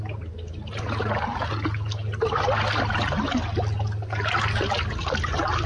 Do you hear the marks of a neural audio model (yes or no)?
no